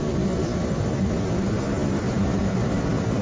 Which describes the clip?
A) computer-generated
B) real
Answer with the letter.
B